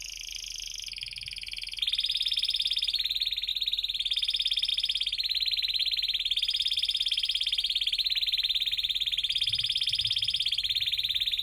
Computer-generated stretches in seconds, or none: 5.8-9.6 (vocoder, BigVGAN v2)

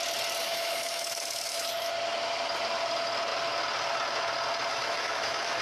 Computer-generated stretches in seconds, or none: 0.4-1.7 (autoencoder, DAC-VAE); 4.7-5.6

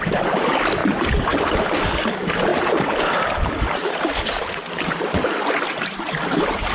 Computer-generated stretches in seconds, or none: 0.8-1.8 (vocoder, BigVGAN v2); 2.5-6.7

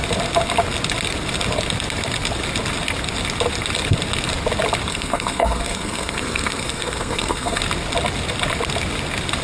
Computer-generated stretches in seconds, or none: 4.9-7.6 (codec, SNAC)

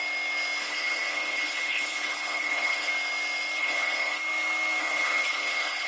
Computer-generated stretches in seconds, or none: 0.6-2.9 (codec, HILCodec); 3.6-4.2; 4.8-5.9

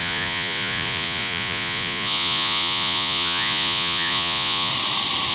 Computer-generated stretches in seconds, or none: 0.0-4.7 (vocoder, Vocos)

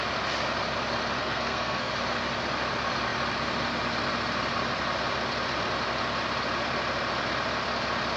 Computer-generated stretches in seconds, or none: 1.2-1.9 (codec, SNAC)

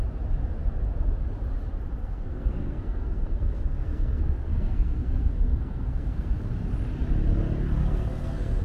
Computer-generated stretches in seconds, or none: 2.0-6.5 (codec, SNAC); 7.8-8.6